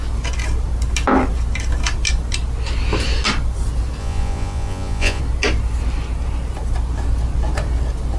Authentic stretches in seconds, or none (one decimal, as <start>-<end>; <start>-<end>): 0.0-4.0; 5.2-8.2